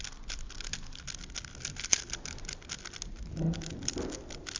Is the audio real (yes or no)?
yes